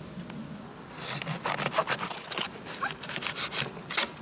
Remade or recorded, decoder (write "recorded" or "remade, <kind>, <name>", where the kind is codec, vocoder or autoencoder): recorded